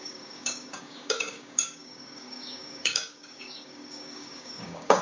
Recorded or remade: remade